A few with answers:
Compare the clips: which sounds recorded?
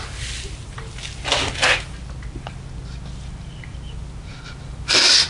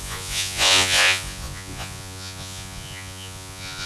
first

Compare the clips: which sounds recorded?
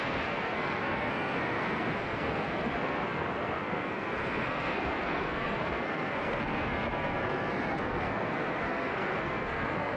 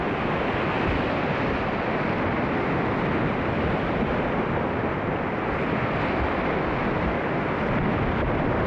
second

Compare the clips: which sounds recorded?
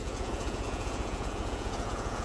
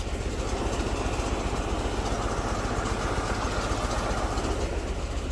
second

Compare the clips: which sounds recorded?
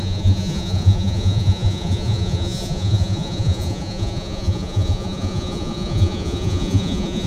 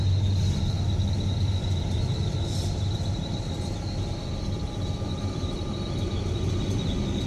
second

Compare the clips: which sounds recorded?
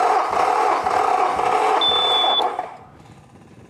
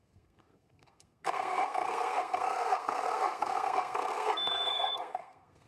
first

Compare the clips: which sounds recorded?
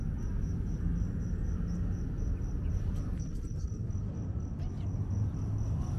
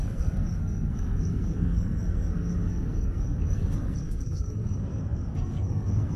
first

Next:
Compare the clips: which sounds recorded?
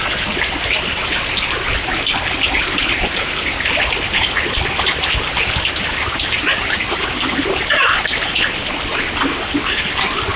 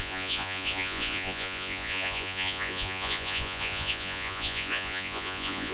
first